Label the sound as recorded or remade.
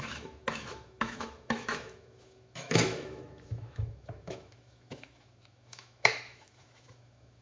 remade